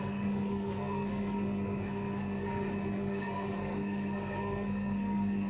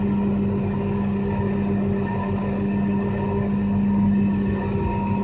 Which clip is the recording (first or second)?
second